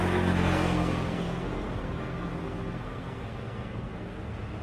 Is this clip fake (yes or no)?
yes